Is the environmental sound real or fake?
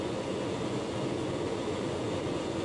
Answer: fake